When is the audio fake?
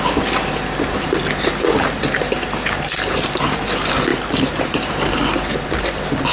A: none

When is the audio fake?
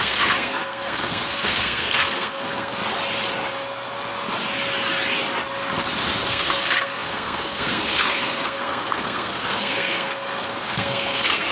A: 0.0-2.8; 6.3-11.5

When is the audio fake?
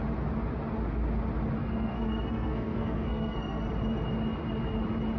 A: 1.6-3.7